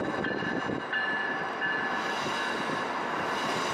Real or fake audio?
real